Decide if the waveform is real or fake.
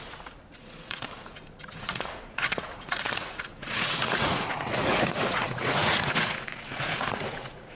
fake